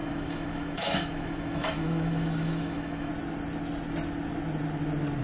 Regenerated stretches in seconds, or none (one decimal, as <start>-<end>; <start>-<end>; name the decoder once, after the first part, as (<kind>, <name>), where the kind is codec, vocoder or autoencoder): 0.0-3.1 (autoencoder, DAC-VAE)